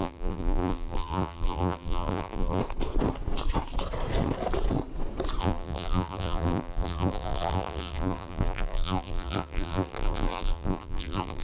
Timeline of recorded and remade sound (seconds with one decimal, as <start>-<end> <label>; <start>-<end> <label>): 0.0-2.6 remade; 2.6-5.4 recorded; 5.4-11.4 remade